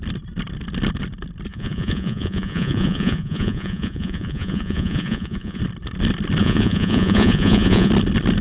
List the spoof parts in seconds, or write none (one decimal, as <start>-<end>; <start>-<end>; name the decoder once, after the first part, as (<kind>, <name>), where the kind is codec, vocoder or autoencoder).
1.5-5.6 (vocoder, Vocos); 6.4-7.9